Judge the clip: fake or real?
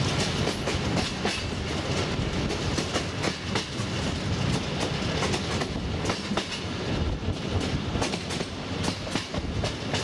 real